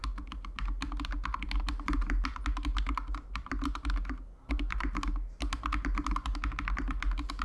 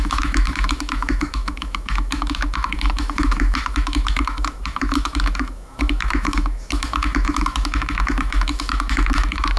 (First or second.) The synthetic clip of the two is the second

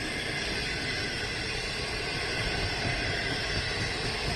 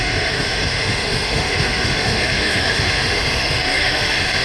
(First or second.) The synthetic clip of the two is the second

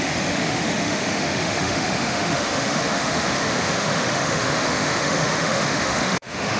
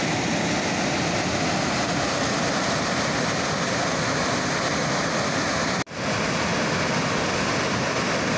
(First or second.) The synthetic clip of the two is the first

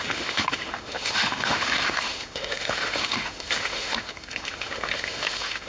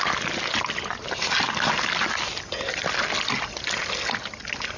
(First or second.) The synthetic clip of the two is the first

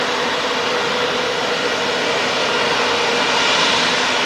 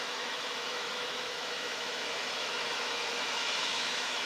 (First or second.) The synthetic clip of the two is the second